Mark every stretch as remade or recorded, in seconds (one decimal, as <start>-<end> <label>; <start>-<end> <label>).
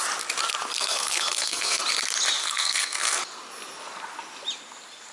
0.0-0.8 recorded; 0.8-1.8 remade; 1.8-2.4 recorded; 2.4-3.2 remade; 3.2-5.1 recorded